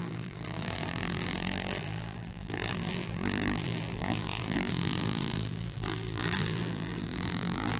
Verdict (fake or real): fake